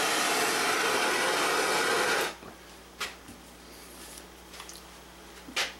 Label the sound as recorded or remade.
recorded